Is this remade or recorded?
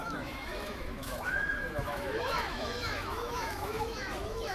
remade